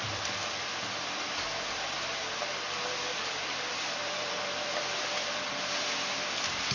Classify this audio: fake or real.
real